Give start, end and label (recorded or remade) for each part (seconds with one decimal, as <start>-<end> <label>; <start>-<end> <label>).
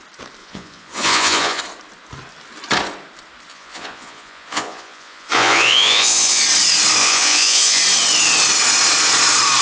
0.0-0.4 recorded; 0.4-1.6 remade; 1.6-3.5 recorded; 3.5-6.4 remade; 6.4-7.0 recorded; 7.0-7.8 remade; 7.8-9.6 recorded